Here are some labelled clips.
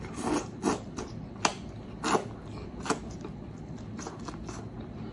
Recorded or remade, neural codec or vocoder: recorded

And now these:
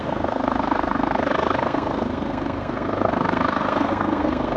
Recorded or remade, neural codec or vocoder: remade, codec, SNAC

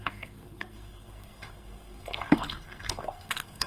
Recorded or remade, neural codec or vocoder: remade, codec, SNAC